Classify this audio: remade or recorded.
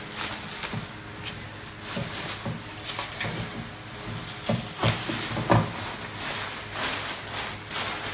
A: recorded